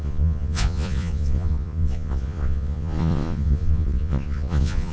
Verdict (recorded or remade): remade